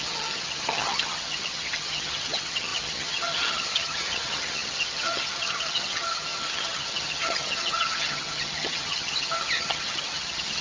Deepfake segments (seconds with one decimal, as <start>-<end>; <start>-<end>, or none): 0.0-10.6